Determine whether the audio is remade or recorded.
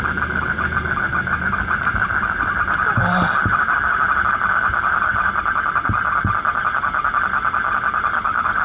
recorded